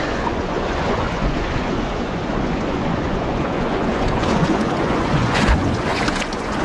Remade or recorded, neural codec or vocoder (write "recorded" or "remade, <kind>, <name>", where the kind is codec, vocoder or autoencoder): remade, vocoder, Vocos